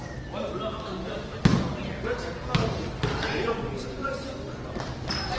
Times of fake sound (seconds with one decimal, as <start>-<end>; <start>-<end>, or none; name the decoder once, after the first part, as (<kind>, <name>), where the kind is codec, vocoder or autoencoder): 3.3-4.1 (vocoder, Vocos)